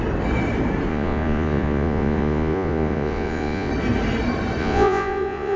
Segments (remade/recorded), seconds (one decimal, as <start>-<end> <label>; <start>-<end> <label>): 0.0-0.9 recorded; 0.9-3.7 remade; 3.7-4.6 recorded; 4.6-5.6 remade